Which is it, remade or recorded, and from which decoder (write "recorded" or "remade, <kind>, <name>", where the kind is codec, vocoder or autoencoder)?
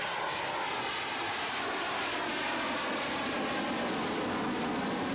recorded